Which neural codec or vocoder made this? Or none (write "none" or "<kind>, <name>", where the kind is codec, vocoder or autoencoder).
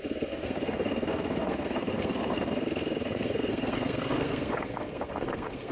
codec, SNAC